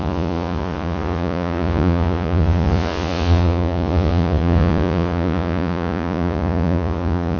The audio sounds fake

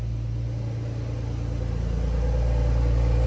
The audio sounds real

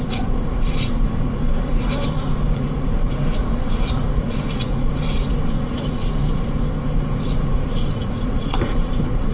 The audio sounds fake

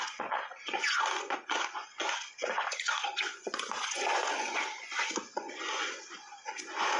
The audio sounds fake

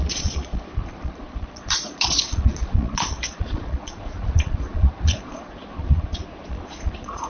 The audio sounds fake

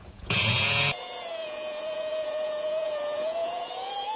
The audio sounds fake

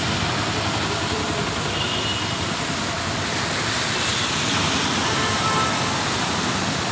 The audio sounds real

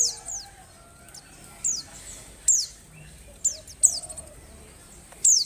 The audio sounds real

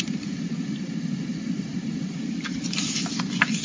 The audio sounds real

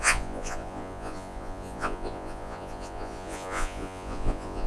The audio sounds fake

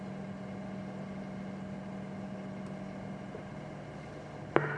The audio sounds real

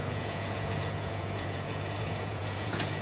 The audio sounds fake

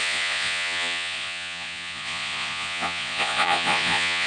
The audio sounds fake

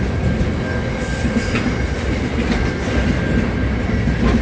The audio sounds real